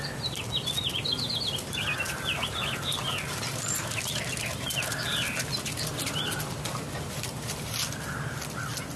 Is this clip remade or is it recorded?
recorded